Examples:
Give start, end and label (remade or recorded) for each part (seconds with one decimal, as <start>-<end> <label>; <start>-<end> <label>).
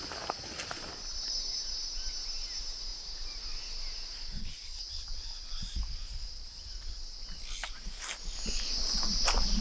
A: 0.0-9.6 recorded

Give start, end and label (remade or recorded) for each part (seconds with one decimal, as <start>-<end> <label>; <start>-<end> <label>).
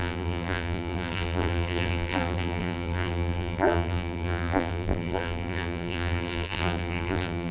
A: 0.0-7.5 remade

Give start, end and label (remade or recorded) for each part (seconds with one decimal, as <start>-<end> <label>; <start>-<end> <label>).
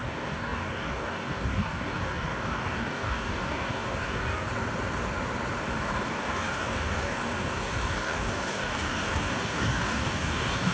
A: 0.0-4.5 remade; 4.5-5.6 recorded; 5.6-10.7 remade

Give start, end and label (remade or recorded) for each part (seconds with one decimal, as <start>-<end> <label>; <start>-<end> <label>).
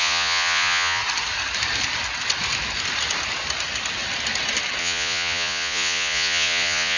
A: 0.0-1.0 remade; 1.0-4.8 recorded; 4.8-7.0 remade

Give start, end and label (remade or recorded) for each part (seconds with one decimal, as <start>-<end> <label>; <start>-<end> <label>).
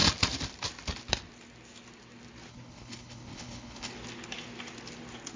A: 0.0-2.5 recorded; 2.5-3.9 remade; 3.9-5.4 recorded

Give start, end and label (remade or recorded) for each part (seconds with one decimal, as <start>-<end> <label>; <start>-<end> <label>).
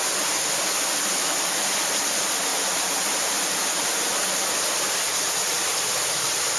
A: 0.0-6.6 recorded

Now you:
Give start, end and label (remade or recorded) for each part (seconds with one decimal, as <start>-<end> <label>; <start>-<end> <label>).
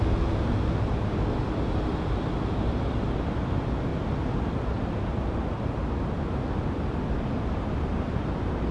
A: 0.0-8.7 recorded